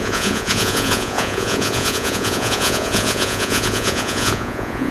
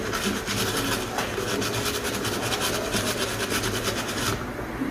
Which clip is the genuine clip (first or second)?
second